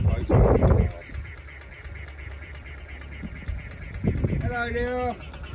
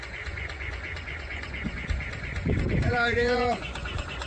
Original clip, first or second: first